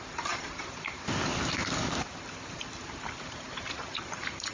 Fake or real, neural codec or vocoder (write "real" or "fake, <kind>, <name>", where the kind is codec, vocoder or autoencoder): fake, vocoder, BigVGAN v2